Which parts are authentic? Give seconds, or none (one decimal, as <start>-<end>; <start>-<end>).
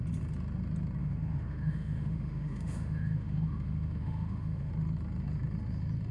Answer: 0.0-1.0; 4.7-6.1